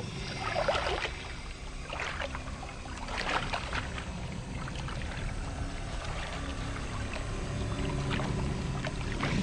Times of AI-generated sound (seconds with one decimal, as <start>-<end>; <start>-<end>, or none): 0.0-6.5; 7.9-9.4